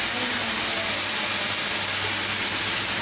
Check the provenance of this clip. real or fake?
real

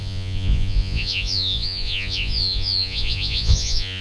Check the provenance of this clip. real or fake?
fake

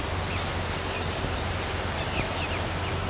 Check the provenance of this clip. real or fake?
real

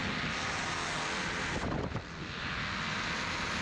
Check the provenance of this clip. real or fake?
real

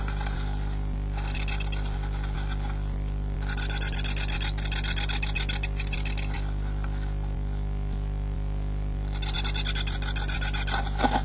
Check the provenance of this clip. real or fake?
real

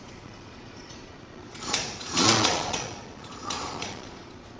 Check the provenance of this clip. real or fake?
fake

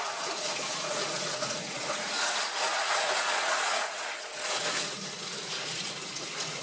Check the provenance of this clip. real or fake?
fake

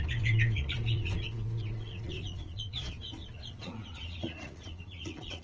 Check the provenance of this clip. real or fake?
fake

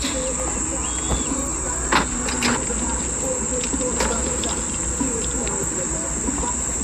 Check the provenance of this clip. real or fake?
real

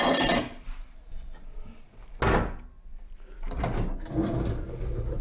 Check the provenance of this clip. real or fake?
real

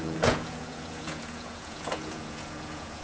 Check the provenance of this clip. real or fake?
fake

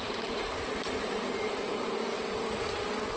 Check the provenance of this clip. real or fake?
real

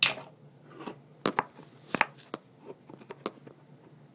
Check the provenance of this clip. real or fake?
real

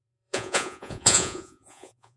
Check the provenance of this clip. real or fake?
fake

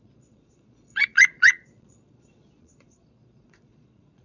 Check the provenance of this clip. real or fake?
fake